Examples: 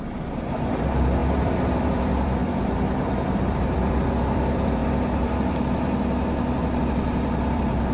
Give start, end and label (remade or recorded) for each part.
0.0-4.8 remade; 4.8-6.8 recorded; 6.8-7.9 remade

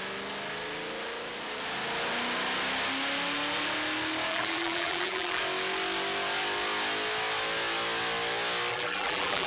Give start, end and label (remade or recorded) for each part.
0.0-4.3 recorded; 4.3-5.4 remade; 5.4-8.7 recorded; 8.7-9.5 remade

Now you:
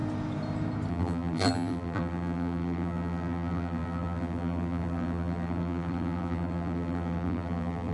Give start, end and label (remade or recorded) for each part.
0.0-0.9 recorded; 0.9-7.9 remade

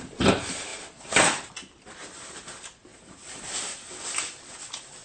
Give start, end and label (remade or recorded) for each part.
0.0-2.9 recorded; 2.9-3.9 remade; 3.9-5.0 recorded

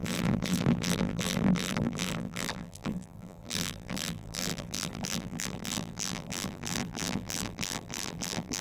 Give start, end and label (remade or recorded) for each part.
0.0-8.6 remade

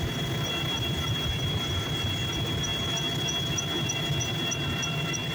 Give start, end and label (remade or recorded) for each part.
0.0-2.7 remade; 2.7-3.5 recorded; 3.5-5.3 remade

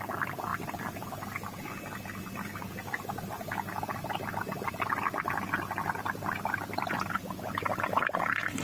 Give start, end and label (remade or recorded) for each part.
0.0-8.6 recorded